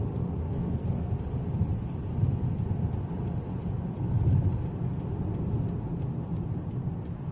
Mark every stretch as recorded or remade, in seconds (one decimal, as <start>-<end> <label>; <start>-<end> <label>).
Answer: 0.0-0.4 recorded; 0.4-1.1 remade; 1.1-7.3 recorded